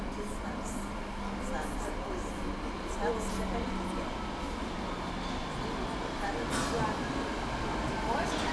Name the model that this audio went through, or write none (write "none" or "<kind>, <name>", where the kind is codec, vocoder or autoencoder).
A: none